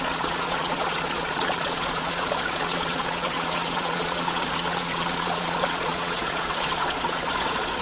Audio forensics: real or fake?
fake